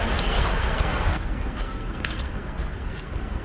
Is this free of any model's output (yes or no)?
no